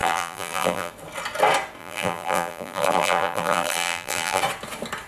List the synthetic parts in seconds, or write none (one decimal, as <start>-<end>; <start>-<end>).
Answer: 0.0-0.9; 1.8-4.4